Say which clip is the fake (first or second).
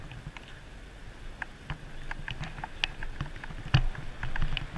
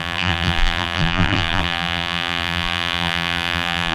second